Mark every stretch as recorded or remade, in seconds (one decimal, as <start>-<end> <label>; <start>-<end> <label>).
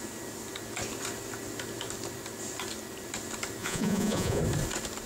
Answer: 0.0-3.6 recorded; 3.6-4.4 remade; 4.4-5.1 recorded